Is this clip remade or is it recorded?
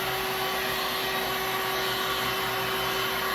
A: recorded